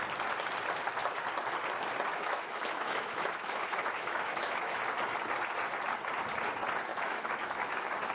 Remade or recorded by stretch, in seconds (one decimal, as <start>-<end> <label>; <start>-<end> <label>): 0.0-2.1 recorded; 2.1-4.8 remade; 4.8-6.9 recorded; 6.9-8.1 remade